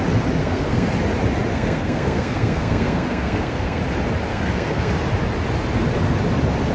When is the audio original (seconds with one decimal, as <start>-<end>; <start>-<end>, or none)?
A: 0.0-0.4; 0.9-1.5; 3.8-4.3; 4.9-6.7